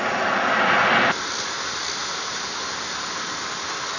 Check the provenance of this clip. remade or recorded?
recorded